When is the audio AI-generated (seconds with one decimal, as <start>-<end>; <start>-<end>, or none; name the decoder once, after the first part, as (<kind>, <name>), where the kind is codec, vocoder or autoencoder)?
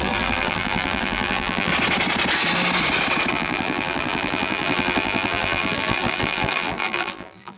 0.0-1.7 (vocoder, BigVGAN v2); 3.3-7.6